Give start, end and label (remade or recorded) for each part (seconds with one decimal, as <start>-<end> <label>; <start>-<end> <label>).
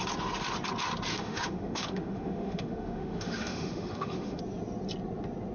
0.0-1.1 recorded; 1.1-4.4 remade; 4.4-5.5 recorded